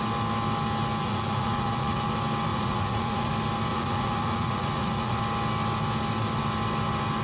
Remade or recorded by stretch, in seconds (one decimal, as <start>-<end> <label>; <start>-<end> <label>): 0.0-1.0 recorded; 1.0-2.1 remade; 2.1-2.5 recorded; 2.5-3.3 remade; 3.3-3.7 recorded; 3.7-5.2 remade; 5.2-7.2 recorded